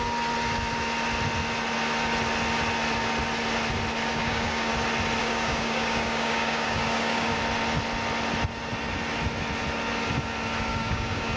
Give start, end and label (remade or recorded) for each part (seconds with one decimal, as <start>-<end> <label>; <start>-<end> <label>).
0.0-4.1 recorded; 4.1-4.7 remade; 4.7-5.2 recorded; 5.2-7.4 remade; 7.4-10.7 recorded; 10.7-11.4 remade